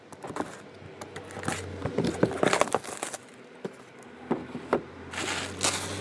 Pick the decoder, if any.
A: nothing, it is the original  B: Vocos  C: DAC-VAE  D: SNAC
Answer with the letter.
A